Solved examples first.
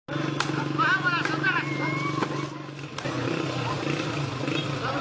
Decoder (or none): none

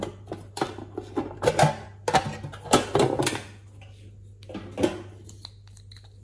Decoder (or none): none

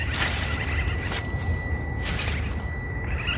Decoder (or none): none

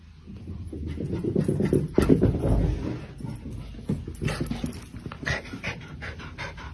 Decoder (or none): none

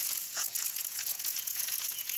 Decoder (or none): vocoder, Vocos